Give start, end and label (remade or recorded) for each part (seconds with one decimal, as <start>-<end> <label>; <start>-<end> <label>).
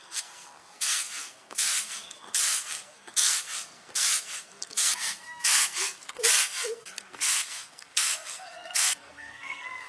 0.0-9.9 remade